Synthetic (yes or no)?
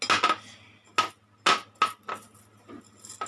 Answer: no